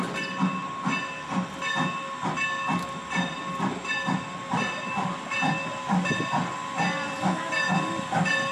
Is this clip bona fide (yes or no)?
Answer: yes